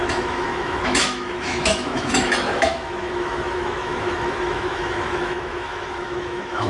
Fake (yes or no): yes